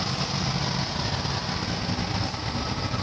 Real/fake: real